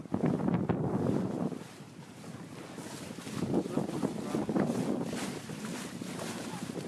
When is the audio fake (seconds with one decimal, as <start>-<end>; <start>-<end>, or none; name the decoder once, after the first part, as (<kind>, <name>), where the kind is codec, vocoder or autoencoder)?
0.0-3.9 (vocoder, BigVGAN v2)